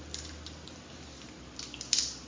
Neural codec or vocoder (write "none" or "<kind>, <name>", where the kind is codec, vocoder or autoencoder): none